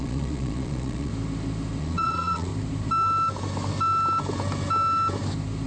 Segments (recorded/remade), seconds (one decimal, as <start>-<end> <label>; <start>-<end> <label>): 0.0-1.1 remade; 1.1-1.8 recorded; 1.8-2.5 remade; 2.5-5.7 recorded